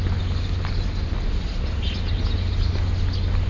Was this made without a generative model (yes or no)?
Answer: yes